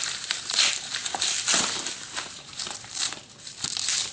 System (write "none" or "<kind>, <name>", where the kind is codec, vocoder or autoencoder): vocoder, BigVGAN v2